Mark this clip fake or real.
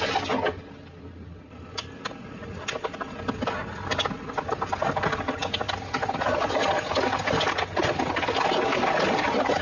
real